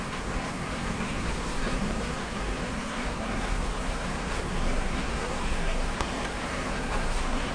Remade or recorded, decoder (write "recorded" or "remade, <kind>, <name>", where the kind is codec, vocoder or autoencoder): remade, codec, SNAC